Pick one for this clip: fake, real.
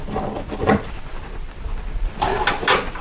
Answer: real